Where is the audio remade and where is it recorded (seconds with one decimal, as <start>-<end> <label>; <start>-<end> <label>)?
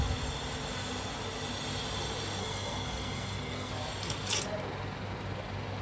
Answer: 0.0-2.4 recorded; 2.4-3.7 remade; 3.7-5.8 recorded